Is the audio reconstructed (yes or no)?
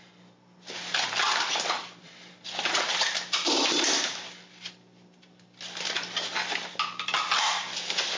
no